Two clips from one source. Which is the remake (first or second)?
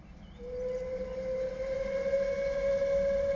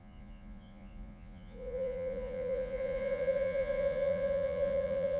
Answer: second